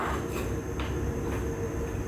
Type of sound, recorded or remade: recorded